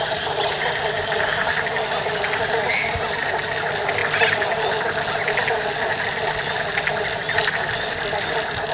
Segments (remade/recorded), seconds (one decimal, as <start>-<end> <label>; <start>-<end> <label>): 0.0-8.7 recorded